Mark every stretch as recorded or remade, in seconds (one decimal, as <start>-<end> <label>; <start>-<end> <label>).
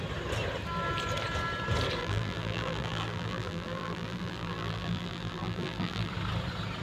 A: 0.0-2.0 recorded; 2.0-6.1 remade; 6.1-6.8 recorded